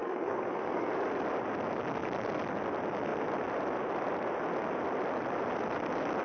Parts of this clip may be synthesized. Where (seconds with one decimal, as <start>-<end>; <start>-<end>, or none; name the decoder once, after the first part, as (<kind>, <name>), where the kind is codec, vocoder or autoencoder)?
0.0-0.9 (codec, SNAC)